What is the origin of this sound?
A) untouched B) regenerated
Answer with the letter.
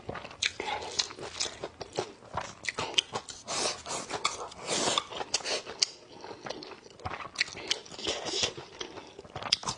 A